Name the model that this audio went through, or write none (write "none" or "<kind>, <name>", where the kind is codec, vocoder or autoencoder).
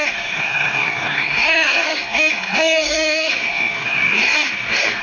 codec, SNAC